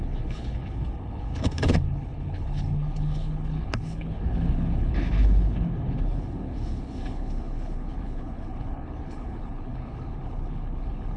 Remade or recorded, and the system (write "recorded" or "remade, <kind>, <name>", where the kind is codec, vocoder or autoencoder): remade, codec, HILCodec